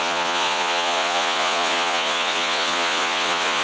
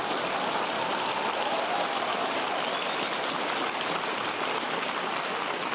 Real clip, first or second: second